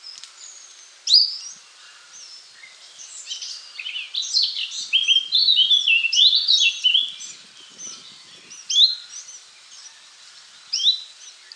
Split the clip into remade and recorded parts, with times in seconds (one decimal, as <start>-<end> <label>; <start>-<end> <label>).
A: 0.0-11.6 recorded

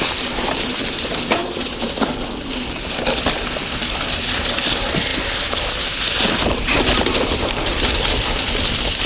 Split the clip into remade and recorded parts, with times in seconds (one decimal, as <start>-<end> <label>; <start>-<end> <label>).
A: 0.0-9.1 remade

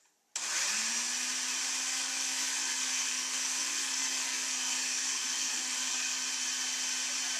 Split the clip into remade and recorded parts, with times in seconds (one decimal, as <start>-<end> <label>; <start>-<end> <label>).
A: 0.0-1.8 recorded; 1.8-6.2 remade; 6.2-7.4 recorded

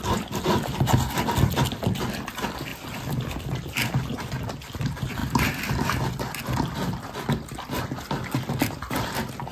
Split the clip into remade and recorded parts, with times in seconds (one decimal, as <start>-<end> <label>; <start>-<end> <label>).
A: 0.0-9.5 recorded

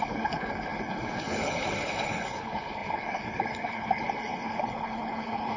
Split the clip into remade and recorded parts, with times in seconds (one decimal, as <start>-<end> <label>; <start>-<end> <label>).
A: 0.0-5.6 remade